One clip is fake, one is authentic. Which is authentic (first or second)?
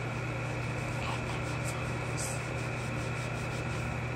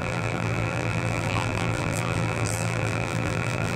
first